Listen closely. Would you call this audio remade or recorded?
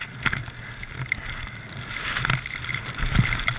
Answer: recorded